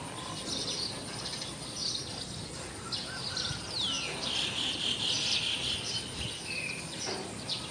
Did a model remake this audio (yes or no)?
no